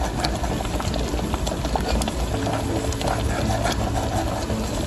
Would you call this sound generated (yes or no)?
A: no